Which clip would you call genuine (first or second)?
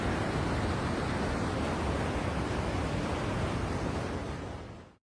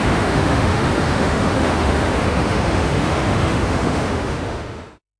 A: first